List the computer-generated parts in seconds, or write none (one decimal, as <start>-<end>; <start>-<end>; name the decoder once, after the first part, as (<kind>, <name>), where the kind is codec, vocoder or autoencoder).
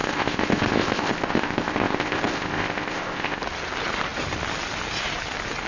0.0-3.4 (codec, ZipCodec)